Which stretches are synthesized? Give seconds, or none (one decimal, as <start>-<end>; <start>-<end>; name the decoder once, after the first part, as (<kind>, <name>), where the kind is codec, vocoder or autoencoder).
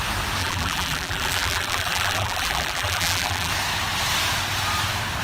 0.4-3.5 (vocoder, BigVGAN v2)